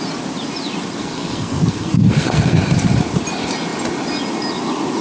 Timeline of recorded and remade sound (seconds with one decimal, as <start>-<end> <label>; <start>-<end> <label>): 0.0-1.0 recorded; 1.0-2.6 remade; 2.6-5.0 recorded